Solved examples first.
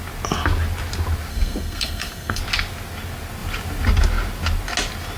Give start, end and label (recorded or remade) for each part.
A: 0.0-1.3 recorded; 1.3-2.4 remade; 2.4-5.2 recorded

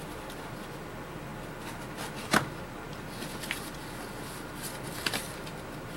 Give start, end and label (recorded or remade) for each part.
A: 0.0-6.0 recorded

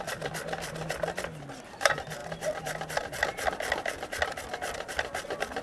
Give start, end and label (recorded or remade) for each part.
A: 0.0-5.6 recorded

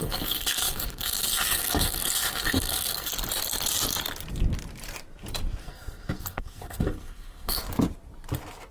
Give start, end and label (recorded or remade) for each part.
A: 0.0-3.1 remade; 3.1-5.6 recorded; 5.6-7.6 remade; 7.6-8.7 recorded

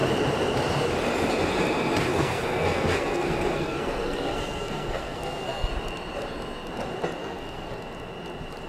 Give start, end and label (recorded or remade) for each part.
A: 0.0-2.1 recorded; 2.1-5.7 remade; 5.7-7.2 recorded; 7.2-7.8 remade; 7.8-8.7 recorded

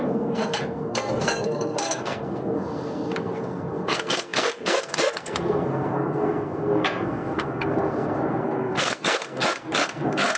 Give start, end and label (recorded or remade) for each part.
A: 0.0-10.4 remade

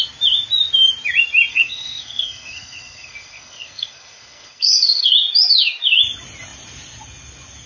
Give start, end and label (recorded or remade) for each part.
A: 0.0-1.5 recorded; 1.5-5.1 remade; 5.1-7.7 recorded

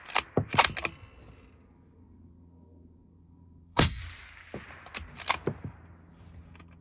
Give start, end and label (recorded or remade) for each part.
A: 0.0-2.0 recorded; 2.0-4.0 remade; 4.0-6.8 recorded